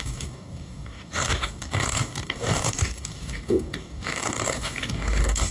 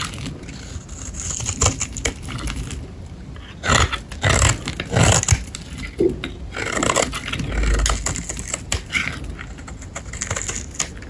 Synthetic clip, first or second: first